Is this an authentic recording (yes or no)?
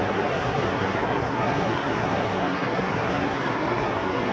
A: no